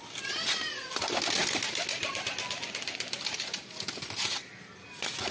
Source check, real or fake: real